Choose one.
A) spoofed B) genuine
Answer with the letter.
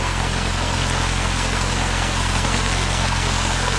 A